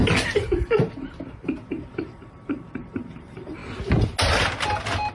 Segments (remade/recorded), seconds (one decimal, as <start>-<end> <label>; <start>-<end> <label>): 0.0-1.7 recorded; 1.7-3.6 remade; 3.6-5.1 recorded

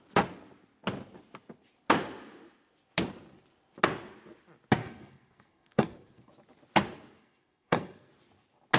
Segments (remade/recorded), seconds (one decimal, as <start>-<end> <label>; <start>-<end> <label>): 0.0-4.8 recorded; 4.8-6.3 remade; 6.3-7.2 recorded; 7.2-8.1 remade; 8.1-8.8 recorded

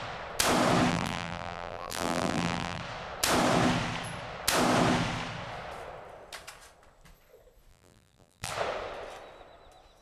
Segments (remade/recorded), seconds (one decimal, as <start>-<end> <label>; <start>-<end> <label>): 0.0-0.9 recorded; 0.9-2.8 remade; 2.8-7.7 recorded; 7.7-8.5 remade; 8.5-10.0 recorded

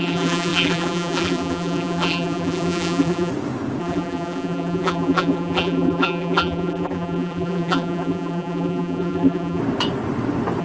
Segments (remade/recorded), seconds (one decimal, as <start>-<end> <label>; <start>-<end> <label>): 0.0-3.3 remade; 3.3-3.8 recorded; 3.8-9.6 remade; 9.6-10.6 recorded